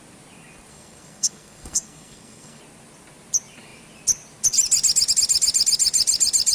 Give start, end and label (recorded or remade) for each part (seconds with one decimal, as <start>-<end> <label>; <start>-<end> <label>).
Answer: 0.0-0.7 recorded; 0.7-2.6 remade; 2.6-6.5 recorded